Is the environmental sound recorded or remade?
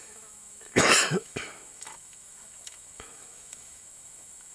remade